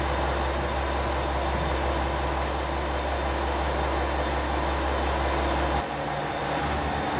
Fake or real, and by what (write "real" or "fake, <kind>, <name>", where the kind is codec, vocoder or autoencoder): real